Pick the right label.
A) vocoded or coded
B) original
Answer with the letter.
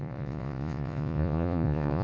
A